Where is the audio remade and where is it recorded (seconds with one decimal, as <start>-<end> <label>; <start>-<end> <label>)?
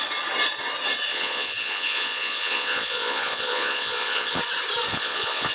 0.0-1.1 recorded; 1.1-4.4 remade; 4.4-4.9 recorded; 4.9-5.5 remade